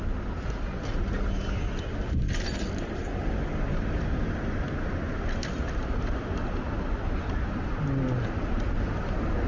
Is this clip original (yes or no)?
yes